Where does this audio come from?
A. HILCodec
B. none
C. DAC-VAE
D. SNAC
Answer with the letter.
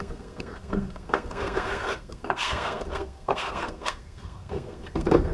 D